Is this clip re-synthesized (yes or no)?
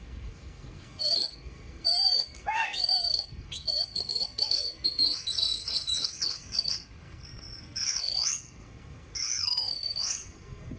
yes